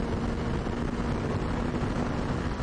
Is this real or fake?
real